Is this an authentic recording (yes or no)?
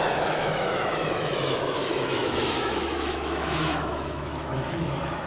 no